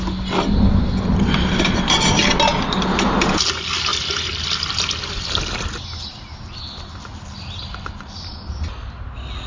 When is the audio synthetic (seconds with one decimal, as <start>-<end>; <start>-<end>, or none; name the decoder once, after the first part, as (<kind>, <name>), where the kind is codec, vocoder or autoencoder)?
none